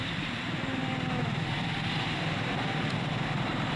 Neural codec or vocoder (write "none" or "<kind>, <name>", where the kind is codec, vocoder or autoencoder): vocoder, BigVGAN v2